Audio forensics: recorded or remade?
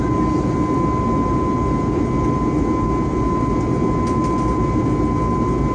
recorded